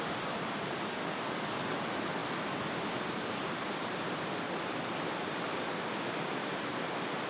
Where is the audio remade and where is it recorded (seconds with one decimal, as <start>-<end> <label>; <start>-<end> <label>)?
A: 0.0-7.3 recorded